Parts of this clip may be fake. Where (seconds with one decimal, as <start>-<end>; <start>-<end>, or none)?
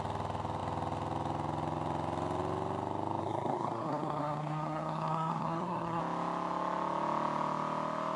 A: 3.2-6.0